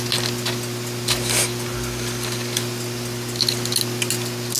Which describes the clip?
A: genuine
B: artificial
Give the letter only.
A